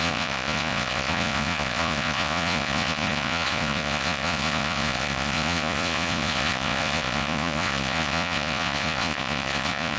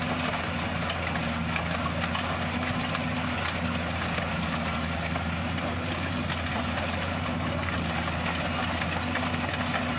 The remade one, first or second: first